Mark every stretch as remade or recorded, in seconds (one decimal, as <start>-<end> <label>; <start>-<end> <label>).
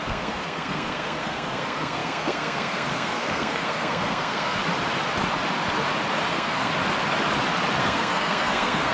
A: 0.0-4.6 remade; 4.6-6.3 recorded; 6.3-6.7 remade; 6.7-7.8 recorded; 7.8-8.9 remade